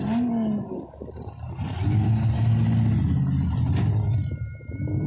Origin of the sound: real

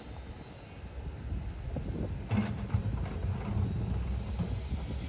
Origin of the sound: real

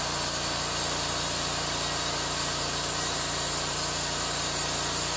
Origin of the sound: real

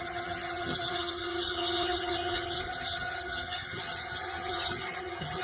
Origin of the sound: fake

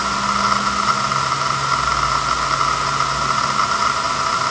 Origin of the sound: real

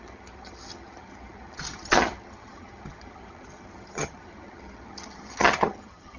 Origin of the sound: fake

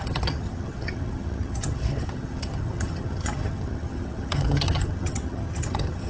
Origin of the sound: fake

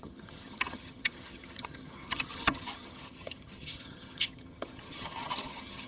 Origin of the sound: fake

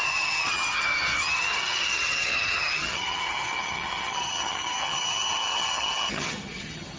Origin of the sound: fake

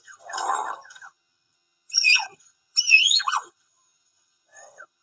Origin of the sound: fake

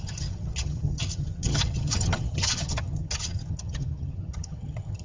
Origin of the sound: fake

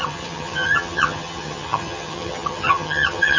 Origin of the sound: fake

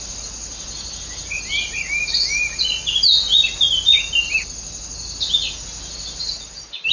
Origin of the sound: real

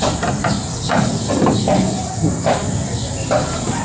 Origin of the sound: real